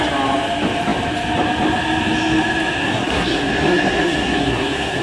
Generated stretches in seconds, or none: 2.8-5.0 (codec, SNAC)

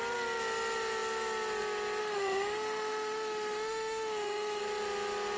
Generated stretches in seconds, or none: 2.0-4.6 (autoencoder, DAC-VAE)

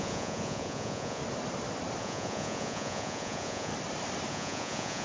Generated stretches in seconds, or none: 0.0-1.2 (vocoder, Vocos); 2.0-3.7; 4.3-5.0

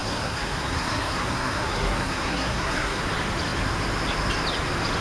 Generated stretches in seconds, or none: 0.0-3.0 (codec, SNAC)